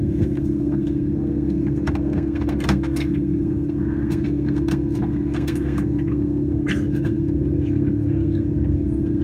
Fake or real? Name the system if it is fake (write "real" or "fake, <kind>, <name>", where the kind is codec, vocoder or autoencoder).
fake, codec, SNAC